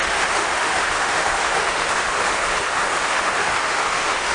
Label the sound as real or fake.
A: fake